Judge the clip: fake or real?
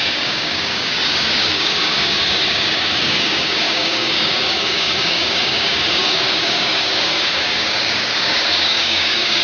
fake